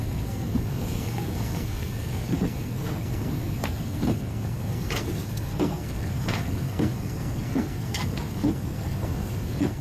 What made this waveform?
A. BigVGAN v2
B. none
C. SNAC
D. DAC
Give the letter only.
C